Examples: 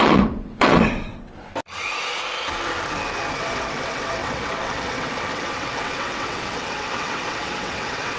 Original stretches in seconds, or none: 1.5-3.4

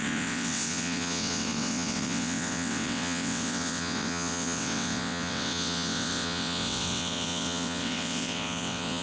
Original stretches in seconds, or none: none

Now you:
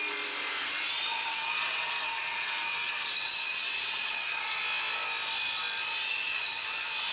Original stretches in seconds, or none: 0.0-0.6; 4.6-6.0; 6.5-7.1

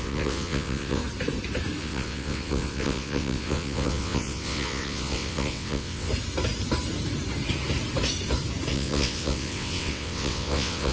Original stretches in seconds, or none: 1.0-1.8; 6.1-8.7